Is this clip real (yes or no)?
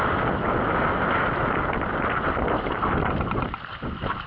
yes